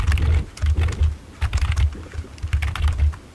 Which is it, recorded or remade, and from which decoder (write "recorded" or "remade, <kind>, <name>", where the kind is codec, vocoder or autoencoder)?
recorded